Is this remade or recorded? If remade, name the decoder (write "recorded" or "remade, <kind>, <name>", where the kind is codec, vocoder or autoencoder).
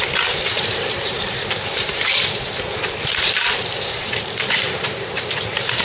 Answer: remade, vocoder, BigVGAN v2